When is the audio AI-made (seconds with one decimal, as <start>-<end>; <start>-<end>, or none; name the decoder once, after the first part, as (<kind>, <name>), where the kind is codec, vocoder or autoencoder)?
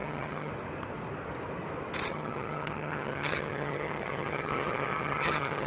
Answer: 0.0-0.5 (vocoder, HiFi-GAN); 2.1-5.7